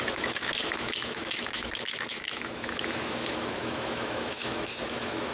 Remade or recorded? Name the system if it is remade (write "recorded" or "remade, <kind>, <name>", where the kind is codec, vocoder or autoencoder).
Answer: remade, autoencoder, DAC-VAE